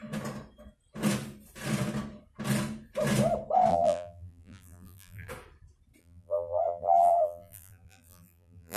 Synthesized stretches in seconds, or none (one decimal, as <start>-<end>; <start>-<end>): 3.7-5.3; 6.0-8.8